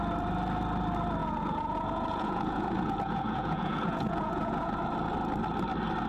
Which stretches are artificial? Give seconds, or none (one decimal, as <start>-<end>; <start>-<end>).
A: 1.2-4.8